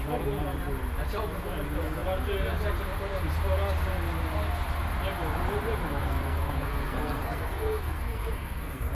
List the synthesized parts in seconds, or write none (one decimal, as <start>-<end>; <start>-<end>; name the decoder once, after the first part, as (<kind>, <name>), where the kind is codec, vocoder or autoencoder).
6.0-8.9 (codec, SNAC)